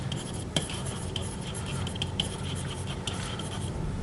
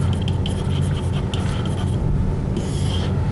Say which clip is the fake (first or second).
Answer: first